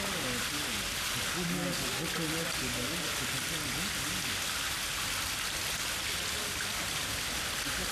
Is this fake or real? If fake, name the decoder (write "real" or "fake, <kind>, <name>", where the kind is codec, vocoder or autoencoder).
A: real